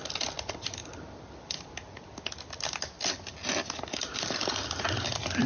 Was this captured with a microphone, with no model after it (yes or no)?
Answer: yes